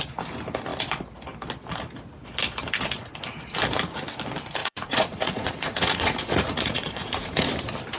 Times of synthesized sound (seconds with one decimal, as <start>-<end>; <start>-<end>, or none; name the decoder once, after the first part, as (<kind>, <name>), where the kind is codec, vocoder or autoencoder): 4.6-7.5 (vocoder, Vocos)